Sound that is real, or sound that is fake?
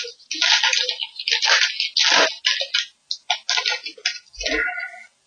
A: real